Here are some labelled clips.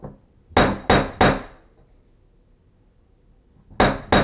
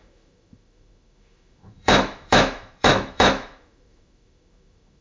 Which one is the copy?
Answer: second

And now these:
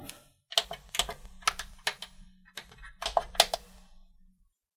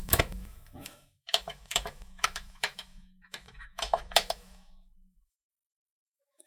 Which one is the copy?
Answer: second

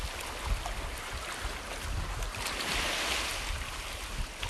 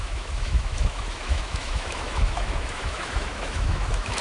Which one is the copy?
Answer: second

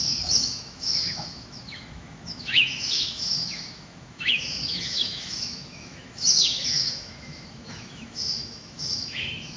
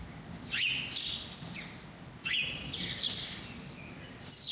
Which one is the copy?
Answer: first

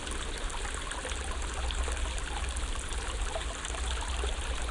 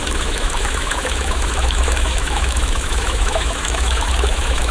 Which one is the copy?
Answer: second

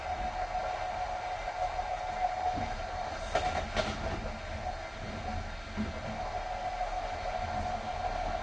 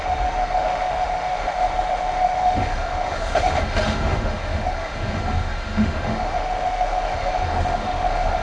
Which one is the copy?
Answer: second